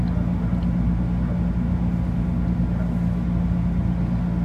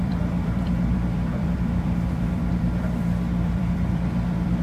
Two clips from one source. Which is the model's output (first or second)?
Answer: second